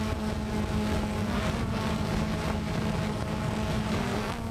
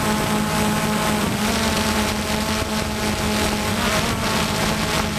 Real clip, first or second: second